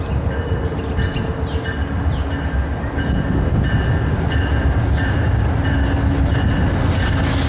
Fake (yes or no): no